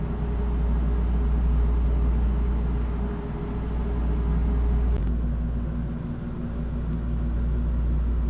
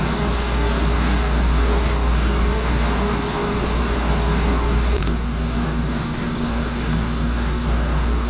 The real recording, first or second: first